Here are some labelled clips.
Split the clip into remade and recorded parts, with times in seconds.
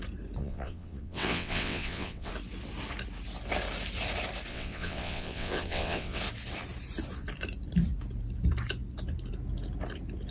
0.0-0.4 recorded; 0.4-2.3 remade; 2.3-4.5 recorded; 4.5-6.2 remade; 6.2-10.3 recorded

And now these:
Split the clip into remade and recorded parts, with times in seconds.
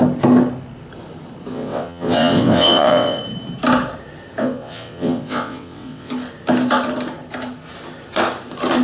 0.0-1.5 recorded; 1.5-3.2 remade; 3.2-4.4 recorded; 4.4-6.1 remade; 6.1-8.8 recorded